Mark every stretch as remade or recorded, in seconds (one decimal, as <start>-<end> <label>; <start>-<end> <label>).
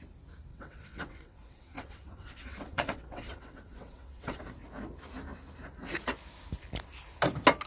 0.0-0.5 recorded; 0.5-4.4 remade; 4.4-7.7 recorded